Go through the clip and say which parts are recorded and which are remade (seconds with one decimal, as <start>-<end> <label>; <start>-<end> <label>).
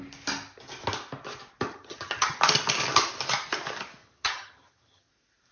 0.0-1.7 recorded; 1.7-2.4 remade; 2.4-4.0 recorded; 4.0-5.1 remade; 5.1-5.5 recorded